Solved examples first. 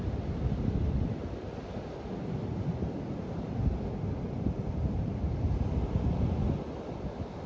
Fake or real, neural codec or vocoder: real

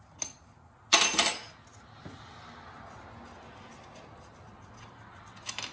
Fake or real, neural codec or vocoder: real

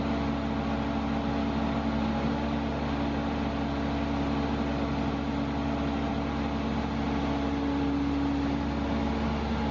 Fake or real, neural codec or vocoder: real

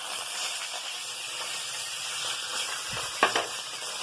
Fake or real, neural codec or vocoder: real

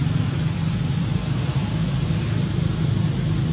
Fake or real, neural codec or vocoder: real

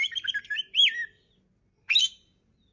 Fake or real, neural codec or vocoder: fake, vocoder, BigVGAN v2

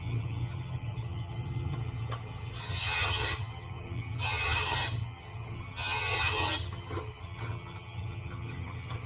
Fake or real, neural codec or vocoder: fake, vocoder, HiFi-GAN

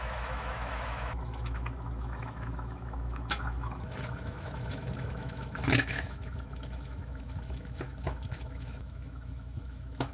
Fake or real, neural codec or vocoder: fake, autoencoder, DAC-VAE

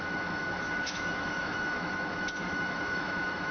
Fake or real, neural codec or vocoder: fake, autoencoder, DAC-VAE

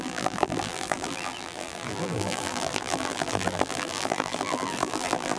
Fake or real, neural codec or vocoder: fake, vocoder, BigVGAN v2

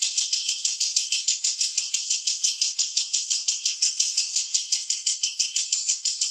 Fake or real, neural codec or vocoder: fake, codec, SNAC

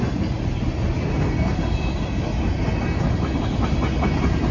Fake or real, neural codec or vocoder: real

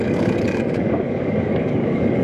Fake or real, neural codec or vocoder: fake, codec, DAC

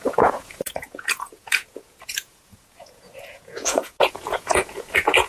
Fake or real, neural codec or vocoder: fake, vocoder, Vocos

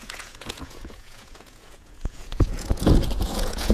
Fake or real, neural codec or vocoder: fake, vocoder, Vocos